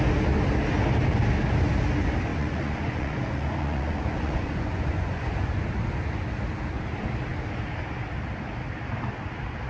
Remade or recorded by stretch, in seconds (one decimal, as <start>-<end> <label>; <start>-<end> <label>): 0.0-2.3 recorded; 2.3-5.6 remade; 5.6-9.7 recorded